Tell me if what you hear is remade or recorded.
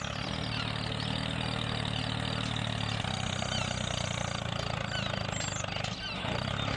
recorded